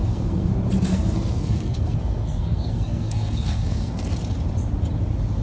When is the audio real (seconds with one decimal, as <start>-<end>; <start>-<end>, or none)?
0.5-0.9; 4.1-5.4